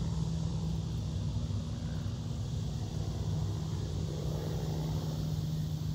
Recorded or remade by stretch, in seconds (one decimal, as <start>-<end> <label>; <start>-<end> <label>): 0.0-3.7 recorded; 3.7-4.6 remade; 4.6-5.9 recorded